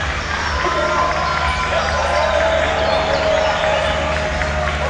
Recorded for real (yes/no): yes